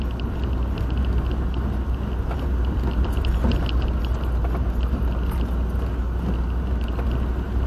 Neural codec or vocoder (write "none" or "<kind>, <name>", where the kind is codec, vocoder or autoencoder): none